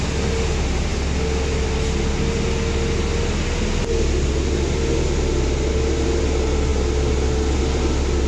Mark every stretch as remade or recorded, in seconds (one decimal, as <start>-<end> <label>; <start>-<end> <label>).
0.0-8.3 recorded